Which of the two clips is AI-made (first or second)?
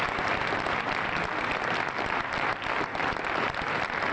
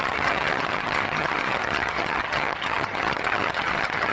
second